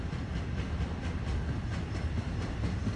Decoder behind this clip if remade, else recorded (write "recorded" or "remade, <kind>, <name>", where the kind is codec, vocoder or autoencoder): recorded